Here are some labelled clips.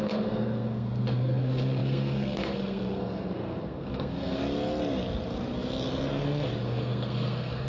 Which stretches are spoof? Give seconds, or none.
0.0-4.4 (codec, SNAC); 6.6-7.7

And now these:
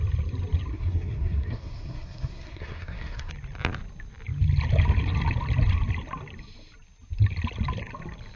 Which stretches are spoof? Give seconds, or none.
0.7-3.3 (codec, SNAC)

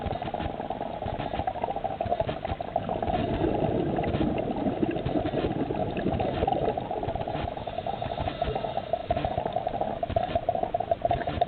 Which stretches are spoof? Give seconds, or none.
5.8-7.7 (vocoder, BigVGAN v2); 9.0-11.5

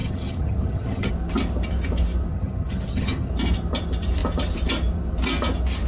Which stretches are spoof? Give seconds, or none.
0.0-1.1 (vocoder, HiFi-GAN); 2.3-3.3

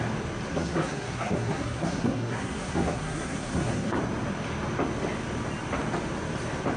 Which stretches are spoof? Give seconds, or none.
0.5-4.0 (codec, SNAC)

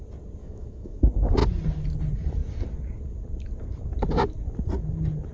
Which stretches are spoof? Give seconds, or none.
0.4-1.0 (autoencoder, DAC-VAE)

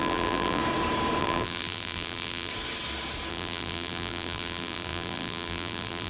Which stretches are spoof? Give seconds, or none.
0.0-0.6 (vocoder, BigVGAN v2); 1.2-2.5; 3.3-6.1

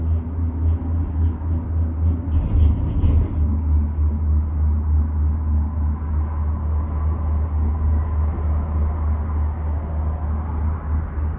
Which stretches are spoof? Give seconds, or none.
none